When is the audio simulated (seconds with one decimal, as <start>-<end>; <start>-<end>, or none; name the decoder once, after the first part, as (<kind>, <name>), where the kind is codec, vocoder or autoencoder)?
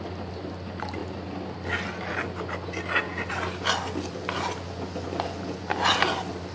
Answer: none